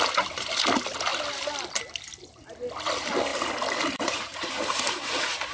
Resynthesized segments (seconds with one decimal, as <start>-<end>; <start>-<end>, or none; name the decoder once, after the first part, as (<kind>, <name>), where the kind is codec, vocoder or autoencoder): 1.1-2.1 (vocoder, BigVGAN v2); 3.3-4.5